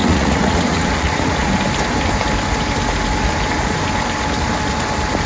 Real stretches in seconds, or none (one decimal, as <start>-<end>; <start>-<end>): 1.5-5.3